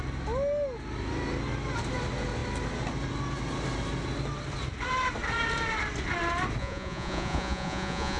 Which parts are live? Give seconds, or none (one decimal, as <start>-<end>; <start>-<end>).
0.0-6.6